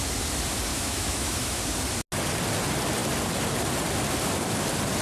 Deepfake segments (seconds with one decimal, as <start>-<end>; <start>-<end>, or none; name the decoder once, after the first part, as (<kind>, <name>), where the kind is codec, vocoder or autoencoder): 0.7-1.6 (autoencoder, DAC-VAE)